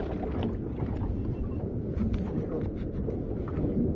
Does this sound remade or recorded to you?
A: recorded